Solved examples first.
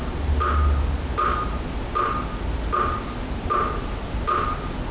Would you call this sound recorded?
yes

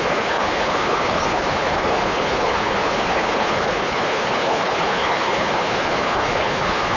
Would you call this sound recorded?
no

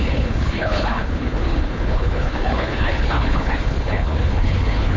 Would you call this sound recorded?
no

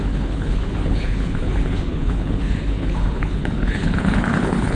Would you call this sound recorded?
no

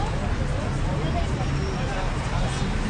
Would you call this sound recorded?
yes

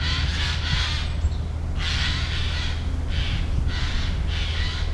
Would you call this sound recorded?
yes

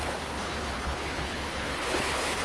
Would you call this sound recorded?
no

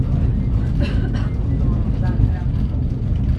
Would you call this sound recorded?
yes